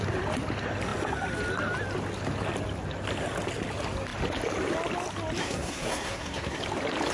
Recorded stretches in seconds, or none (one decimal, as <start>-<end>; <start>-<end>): 0.0-5.4; 6.6-7.1